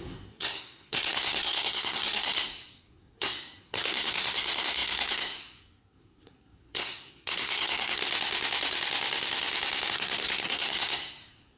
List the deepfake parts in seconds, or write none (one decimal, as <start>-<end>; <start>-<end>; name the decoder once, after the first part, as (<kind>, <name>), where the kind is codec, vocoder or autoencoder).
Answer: 0.0-8.0 (codec, SNAC); 9.9-11.6